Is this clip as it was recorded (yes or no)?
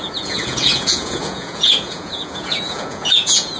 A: no